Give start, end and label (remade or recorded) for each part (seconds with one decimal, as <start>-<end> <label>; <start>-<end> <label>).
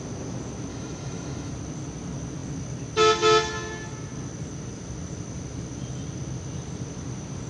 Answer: 0.0-0.7 recorded; 0.7-1.5 remade; 1.5-7.5 recorded